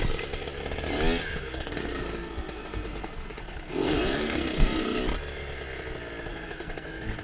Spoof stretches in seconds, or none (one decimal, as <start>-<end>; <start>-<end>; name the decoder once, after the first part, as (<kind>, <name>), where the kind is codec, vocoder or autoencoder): 1.3-5.0 (codec, SNAC); 6.3-7.2